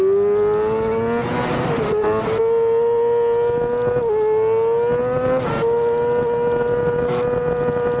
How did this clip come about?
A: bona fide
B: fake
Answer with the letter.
A